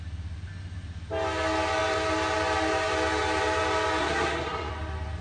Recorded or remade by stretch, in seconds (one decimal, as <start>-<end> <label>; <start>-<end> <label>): 0.0-4.0 recorded; 4.0-4.7 remade; 4.7-5.2 recorded